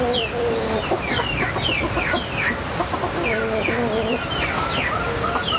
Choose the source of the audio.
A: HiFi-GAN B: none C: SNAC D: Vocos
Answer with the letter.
B